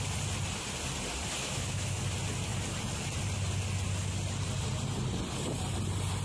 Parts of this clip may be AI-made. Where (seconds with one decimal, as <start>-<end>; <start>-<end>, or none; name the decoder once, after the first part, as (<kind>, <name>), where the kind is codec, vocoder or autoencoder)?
1.4-2.0 (autoencoder, DAC-VAE)